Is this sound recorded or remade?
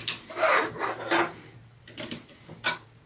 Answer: recorded